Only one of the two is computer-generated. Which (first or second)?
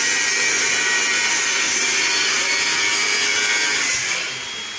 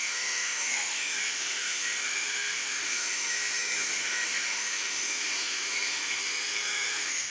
second